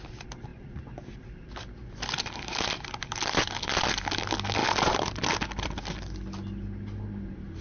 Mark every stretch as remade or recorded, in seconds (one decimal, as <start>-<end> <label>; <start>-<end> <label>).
0.0-0.5 recorded; 0.5-3.7 remade; 3.7-4.6 recorded; 4.6-5.3 remade; 5.3-7.6 recorded